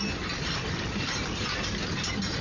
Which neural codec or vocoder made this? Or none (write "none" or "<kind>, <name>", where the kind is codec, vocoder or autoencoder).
none